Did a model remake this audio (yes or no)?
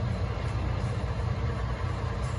yes